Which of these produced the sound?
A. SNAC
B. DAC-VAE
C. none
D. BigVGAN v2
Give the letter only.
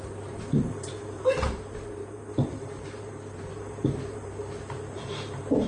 D